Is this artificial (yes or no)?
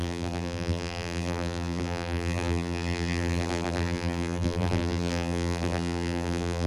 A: yes